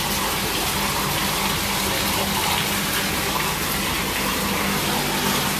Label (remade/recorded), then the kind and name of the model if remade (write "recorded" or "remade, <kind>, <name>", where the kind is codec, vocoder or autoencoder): recorded